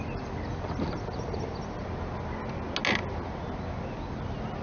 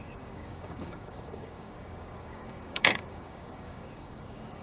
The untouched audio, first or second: first